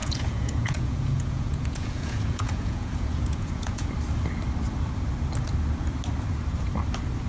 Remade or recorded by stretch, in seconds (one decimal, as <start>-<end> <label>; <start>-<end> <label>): 0.0-3.9 remade; 3.9-7.3 recorded